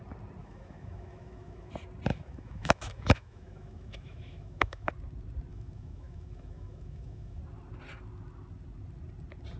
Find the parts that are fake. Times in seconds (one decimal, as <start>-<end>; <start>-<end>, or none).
0.4-1.7; 2.1-4.9; 5.5-7.4